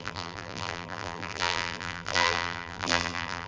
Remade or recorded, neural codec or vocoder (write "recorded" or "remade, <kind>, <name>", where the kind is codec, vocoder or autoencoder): remade, vocoder, BigVGAN v2